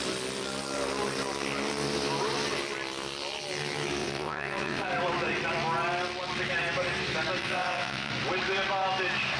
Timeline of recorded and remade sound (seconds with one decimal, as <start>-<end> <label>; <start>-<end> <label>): 0.0-4.0 recorded; 4.0-4.9 remade; 4.9-7.4 recorded; 7.4-8.1 remade; 8.1-9.4 recorded